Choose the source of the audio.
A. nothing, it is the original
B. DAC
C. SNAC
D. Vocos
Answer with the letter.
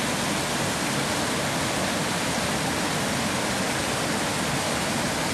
A